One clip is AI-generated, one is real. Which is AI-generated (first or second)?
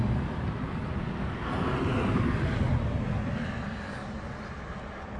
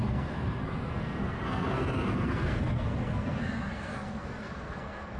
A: second